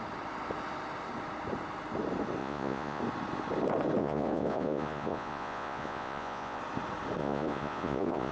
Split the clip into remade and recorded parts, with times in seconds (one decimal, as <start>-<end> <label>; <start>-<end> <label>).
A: 0.0-2.4 recorded; 2.4-3.0 remade; 3.0-4.0 recorded; 4.0-6.6 remade; 6.6-7.2 recorded; 7.2-8.3 remade

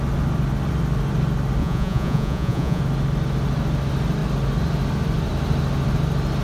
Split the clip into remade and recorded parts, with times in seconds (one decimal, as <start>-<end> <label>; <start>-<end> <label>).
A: 0.0-1.6 recorded; 1.6-2.8 remade; 2.8-6.4 recorded

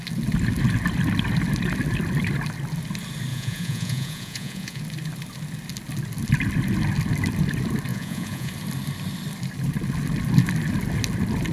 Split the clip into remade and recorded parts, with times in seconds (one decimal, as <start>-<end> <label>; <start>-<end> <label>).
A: 0.0-3.3 recorded; 3.3-4.8 remade; 4.8-7.9 recorded; 7.9-8.5 remade; 8.5-11.5 recorded

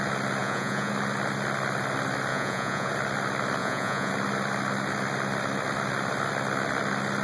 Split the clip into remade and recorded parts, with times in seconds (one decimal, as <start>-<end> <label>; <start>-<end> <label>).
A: 0.0-0.4 recorded; 0.4-0.9 remade; 0.9-2.3 recorded; 2.3-2.9 remade; 2.9-3.6 recorded; 3.6-4.1 remade; 4.1-7.2 recorded

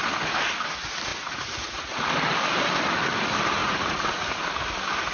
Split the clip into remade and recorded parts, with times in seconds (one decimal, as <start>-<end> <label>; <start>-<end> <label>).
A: 0.0-1.1 recorded; 1.1-1.9 remade; 1.9-3.6 recorded; 3.6-4.4 remade; 4.4-5.1 recorded

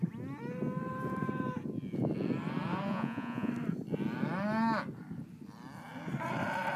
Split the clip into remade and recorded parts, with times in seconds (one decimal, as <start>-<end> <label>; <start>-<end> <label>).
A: 0.0-2.9 recorded; 2.9-3.5 remade; 3.5-6.8 recorded